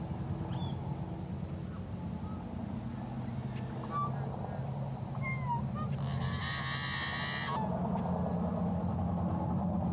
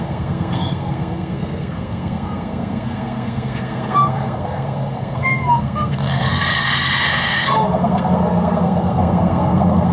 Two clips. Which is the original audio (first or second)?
first